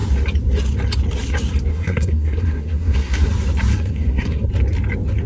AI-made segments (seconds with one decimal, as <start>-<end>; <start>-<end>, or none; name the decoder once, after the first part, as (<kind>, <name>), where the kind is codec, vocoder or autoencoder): 1.7-3.3 (codec, SNAC); 3.7-4.5